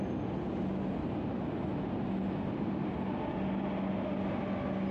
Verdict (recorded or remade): recorded